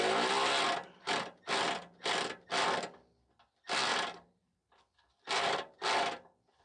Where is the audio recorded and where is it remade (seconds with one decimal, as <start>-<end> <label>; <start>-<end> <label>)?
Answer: 0.0-3.9 recorded; 3.9-4.8 remade; 4.8-6.6 recorded